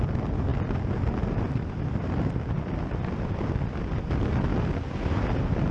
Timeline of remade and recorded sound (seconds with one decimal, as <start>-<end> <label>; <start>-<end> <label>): 0.0-5.7 recorded